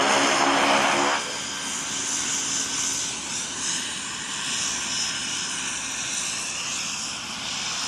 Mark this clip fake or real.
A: real